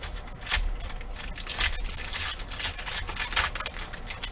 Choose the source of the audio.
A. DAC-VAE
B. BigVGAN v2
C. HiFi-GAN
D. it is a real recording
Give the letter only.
D